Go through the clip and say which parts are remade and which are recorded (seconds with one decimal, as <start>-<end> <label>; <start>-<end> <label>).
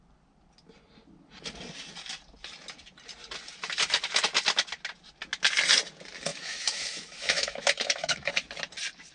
0.0-6.3 recorded; 6.3-8.3 remade; 8.3-9.1 recorded